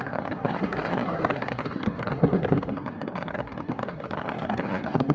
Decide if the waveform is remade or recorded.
remade